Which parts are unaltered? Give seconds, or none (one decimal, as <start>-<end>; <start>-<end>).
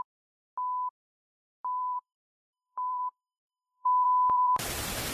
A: 0.0-1.8